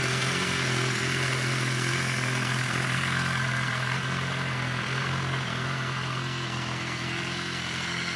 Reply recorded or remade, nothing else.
remade